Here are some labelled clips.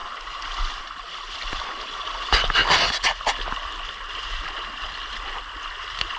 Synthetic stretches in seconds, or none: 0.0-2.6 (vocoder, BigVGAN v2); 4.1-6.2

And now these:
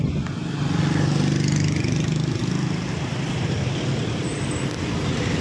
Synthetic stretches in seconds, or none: none

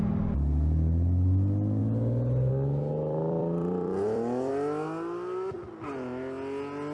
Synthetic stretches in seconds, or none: 2.9-4.5 (vocoder, BigVGAN v2)

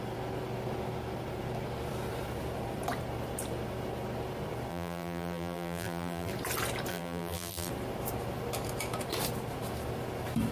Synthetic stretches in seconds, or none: 4.7-6.3 (vocoder, BigVGAN v2); 6.9-7.7